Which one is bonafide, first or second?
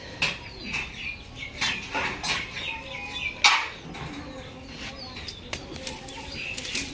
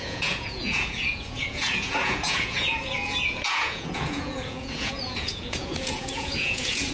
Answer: first